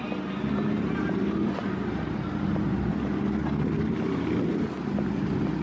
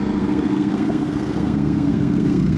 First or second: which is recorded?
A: first